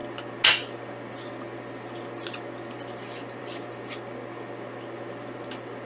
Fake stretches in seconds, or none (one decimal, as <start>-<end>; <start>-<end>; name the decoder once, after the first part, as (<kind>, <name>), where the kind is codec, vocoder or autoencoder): none